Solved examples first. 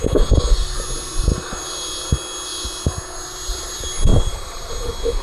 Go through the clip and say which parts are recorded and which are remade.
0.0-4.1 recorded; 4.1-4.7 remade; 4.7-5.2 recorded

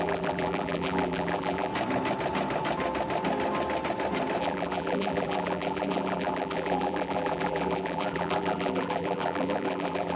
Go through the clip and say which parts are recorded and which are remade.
0.0-1.7 remade; 1.7-4.4 recorded; 4.4-10.2 remade

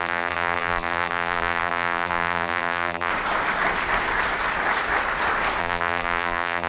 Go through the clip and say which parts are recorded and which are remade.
0.0-3.1 remade; 3.1-5.6 recorded; 5.6-6.7 remade

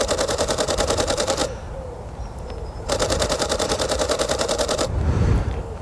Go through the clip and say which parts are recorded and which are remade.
0.0-5.8 remade

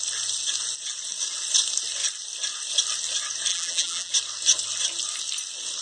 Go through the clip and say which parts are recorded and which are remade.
0.0-3.5 recorded; 3.5-4.1 remade; 4.1-5.8 recorded

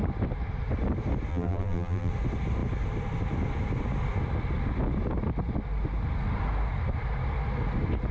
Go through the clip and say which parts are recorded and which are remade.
0.0-1.3 recorded; 1.3-2.1 remade; 2.1-8.1 recorded

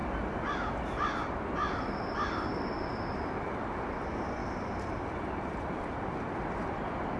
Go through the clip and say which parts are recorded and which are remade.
0.0-4.4 recorded; 4.4-4.9 remade; 4.9-7.2 recorded

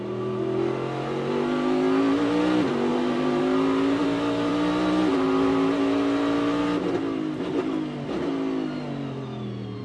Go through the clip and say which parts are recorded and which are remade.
0.0-2.9 recorded; 2.9-3.4 remade; 3.4-9.8 recorded